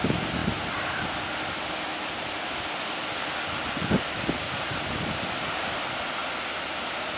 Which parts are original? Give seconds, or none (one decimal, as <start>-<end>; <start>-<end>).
0.0-7.2

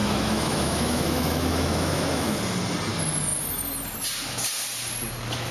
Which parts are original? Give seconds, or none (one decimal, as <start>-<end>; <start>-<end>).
2.4-5.5

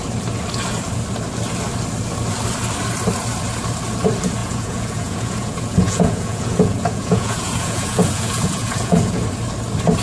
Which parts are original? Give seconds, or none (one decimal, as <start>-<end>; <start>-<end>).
0.0-4.4; 9.2-10.0

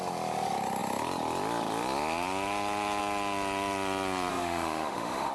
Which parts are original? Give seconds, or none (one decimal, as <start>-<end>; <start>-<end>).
0.0-4.3